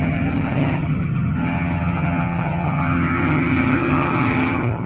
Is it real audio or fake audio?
fake